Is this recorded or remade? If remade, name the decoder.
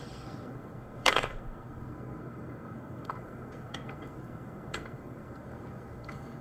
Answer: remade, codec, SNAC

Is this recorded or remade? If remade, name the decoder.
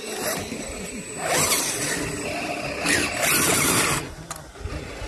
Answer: recorded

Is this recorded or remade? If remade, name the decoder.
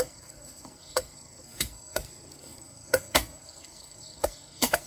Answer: remade, codec, SNAC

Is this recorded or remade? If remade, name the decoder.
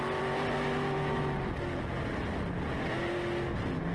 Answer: recorded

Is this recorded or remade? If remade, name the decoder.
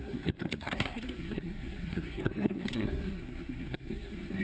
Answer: remade, codec, SNAC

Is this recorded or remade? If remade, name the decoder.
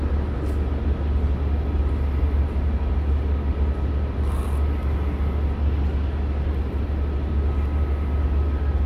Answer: recorded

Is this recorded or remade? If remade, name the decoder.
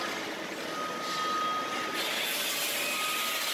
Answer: recorded